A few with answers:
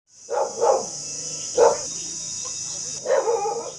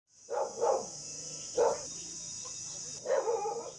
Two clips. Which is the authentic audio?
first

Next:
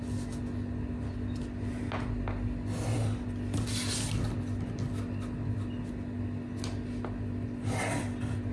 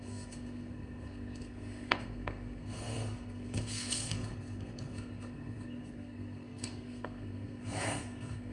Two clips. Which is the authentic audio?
first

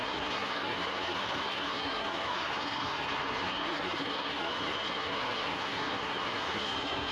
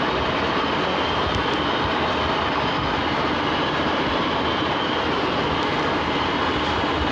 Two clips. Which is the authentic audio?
second